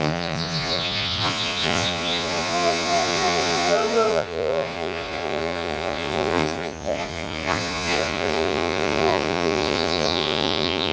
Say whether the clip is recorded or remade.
remade